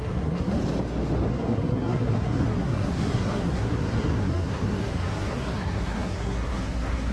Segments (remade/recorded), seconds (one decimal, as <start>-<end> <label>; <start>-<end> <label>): 0.0-0.6 remade; 0.6-1.3 recorded; 1.3-7.1 remade